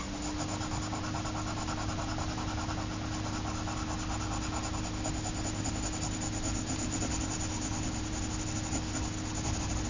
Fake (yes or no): no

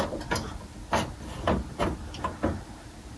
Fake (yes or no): no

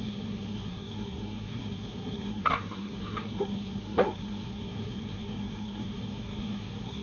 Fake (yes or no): yes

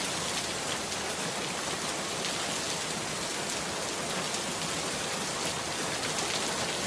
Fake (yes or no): no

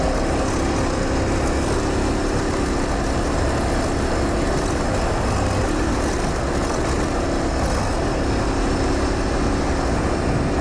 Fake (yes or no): no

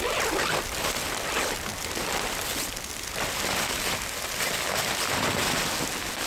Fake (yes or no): no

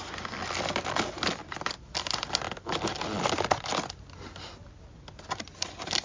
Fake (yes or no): no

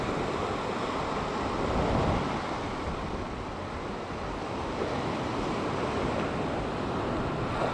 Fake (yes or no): no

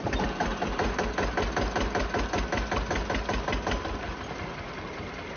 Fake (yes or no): no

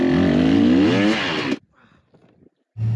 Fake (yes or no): no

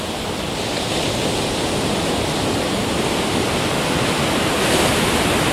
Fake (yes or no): no